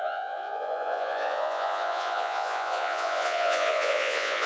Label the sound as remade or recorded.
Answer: remade